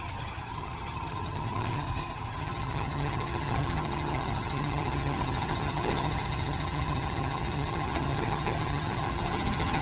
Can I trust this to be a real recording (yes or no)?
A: no